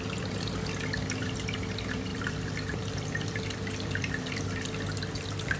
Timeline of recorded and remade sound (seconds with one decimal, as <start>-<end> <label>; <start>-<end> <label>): 0.0-2.1 recorded; 2.1-4.4 remade; 4.4-5.6 recorded